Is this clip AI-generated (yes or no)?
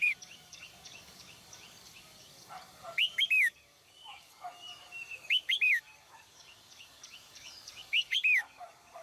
yes